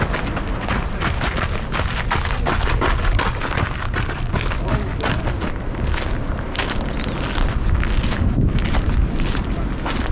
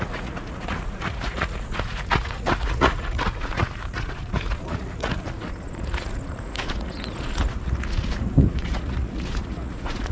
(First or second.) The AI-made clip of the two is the second